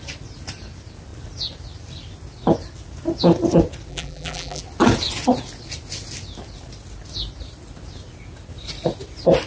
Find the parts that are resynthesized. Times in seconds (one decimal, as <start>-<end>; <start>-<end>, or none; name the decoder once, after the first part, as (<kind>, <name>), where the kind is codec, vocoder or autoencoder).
3.9-4.6 (vocoder, BigVGAN v2)